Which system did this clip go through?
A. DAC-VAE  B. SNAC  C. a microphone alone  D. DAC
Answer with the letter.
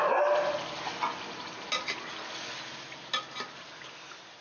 C